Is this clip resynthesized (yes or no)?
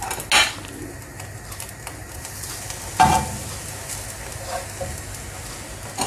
no